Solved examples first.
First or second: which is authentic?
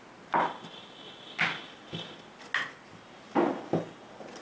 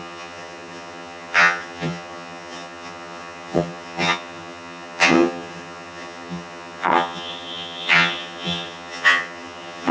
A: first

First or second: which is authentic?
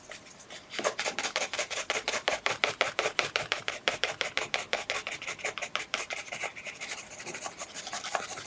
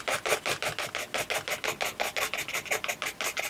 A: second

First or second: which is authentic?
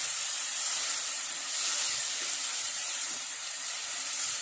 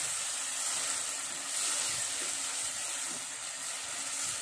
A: second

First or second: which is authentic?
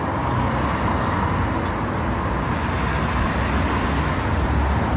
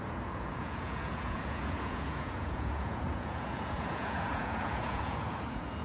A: first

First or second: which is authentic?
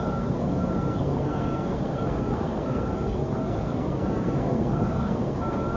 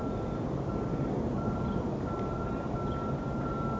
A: second